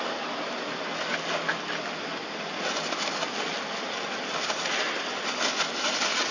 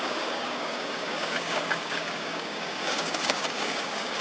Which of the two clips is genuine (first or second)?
first